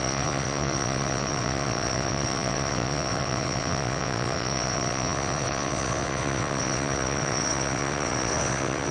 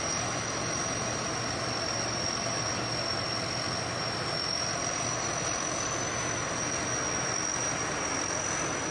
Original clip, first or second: second